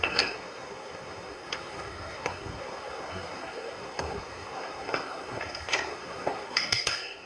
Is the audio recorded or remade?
remade